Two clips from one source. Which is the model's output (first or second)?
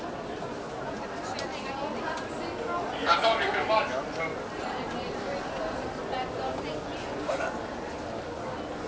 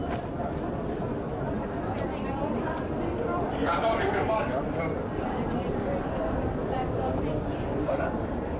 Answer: second